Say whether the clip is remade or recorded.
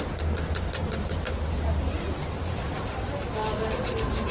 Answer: recorded